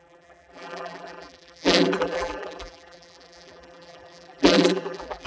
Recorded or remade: remade